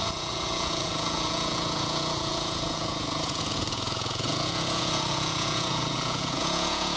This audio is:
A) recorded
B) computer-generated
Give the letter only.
B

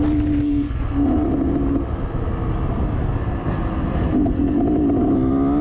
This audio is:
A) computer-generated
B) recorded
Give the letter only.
B